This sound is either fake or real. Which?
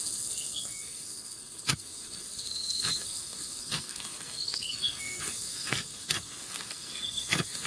fake